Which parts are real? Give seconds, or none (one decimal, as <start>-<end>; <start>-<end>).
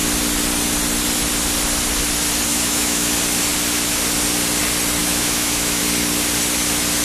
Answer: 0.0-2.5; 3.1-5.0; 5.8-7.0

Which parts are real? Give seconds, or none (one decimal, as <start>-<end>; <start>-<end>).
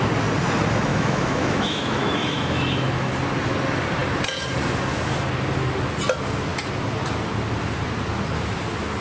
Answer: 0.0-0.9; 3.1-9.0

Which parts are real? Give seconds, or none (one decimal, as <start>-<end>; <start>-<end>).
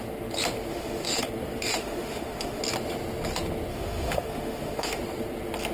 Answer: 0.0-0.7; 1.2-1.7; 2.6-3.7; 5.0-5.7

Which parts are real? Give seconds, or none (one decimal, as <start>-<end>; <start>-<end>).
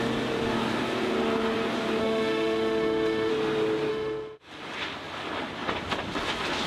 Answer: 0.0-2.0; 3.3-3.9; 4.5-6.7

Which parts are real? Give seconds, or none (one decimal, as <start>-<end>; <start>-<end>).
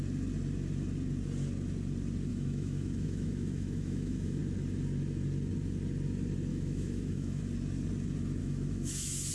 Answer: 0.0-2.3; 4.4-6.5; 7.4-8.4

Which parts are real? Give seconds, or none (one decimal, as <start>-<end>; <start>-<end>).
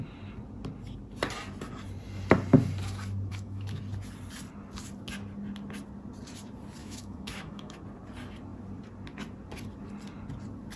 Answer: 0.0-3.3; 3.8-6.8; 7.8-10.8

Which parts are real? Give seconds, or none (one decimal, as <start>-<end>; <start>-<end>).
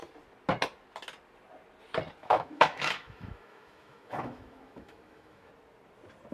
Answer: 0.0-2.2; 5.5-6.3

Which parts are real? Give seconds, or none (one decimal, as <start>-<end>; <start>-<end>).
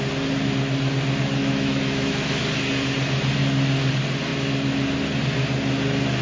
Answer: 0.0-1.4; 2.4-6.2